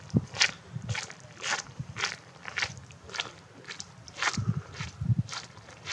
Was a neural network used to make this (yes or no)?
yes